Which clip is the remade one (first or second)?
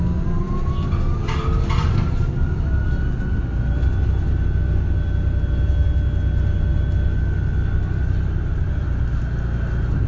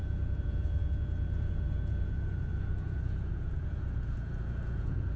second